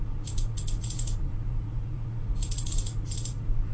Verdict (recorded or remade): remade